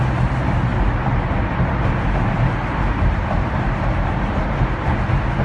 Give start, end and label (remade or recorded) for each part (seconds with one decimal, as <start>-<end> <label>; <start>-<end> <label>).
0.0-2.6 recorded; 2.6-4.4 remade; 4.4-5.4 recorded